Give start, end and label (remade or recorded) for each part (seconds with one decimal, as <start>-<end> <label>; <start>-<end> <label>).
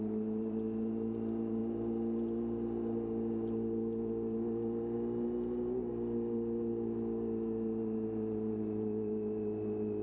0.0-10.0 recorded